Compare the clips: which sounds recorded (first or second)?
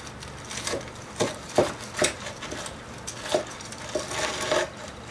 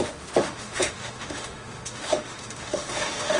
first